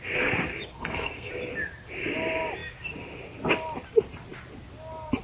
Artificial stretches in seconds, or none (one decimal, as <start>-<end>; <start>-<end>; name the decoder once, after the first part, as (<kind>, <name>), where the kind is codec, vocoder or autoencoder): 0.7-1.3 (codec, SNAC)